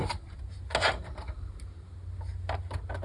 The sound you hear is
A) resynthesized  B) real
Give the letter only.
B